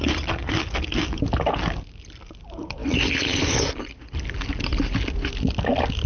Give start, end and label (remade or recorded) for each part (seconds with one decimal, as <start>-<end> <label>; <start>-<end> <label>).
0.0-6.1 recorded